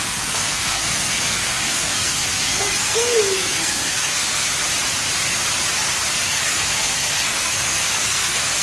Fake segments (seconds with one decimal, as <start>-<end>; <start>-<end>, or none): 0.0-4.5; 6.1-8.6